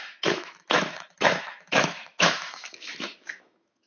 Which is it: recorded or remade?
remade